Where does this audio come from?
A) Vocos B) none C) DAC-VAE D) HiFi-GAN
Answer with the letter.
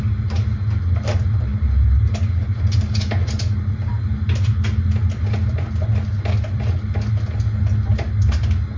B